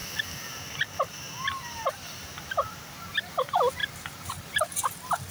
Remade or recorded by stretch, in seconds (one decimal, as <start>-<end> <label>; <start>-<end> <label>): 0.0-5.3 recorded